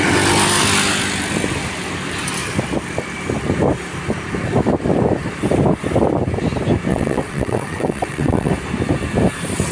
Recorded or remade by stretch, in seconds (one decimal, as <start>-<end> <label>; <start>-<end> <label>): 0.0-6.9 recorded; 6.9-8.5 remade; 8.5-9.7 recorded